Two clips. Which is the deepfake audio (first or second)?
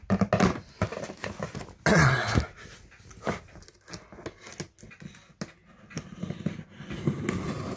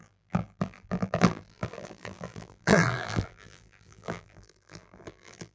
second